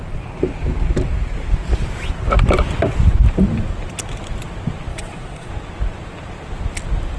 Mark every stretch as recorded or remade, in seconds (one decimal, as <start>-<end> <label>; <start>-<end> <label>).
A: 0.0-4.9 recorded; 4.9-5.5 remade; 5.5-7.2 recorded